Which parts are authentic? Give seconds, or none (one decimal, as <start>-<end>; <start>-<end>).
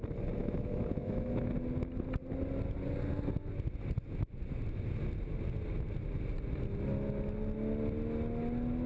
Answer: 0.0-0.4; 1.5-8.9